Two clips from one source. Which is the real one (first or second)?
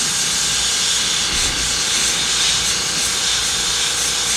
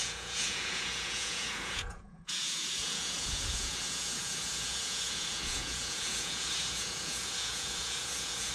first